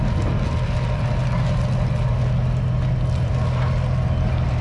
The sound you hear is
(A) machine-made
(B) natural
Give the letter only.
B